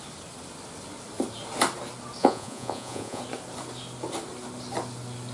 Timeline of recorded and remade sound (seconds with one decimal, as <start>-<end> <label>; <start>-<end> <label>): 0.0-2.2 recorded; 2.2-3.2 remade; 3.2-5.3 recorded